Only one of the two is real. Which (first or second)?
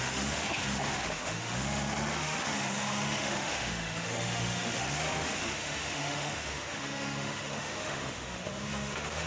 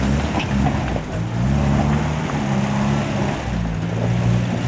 second